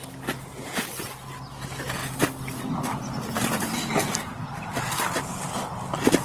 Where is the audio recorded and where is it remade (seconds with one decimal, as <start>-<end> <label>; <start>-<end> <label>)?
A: 0.0-6.2 recorded

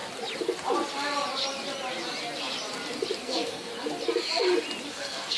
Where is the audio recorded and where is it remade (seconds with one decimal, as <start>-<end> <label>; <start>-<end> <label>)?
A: 0.0-3.2 recorded; 3.2-3.7 remade; 3.7-4.9 recorded; 4.9-5.4 remade